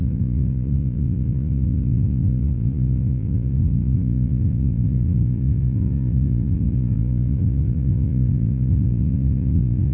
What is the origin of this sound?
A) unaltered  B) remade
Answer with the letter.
B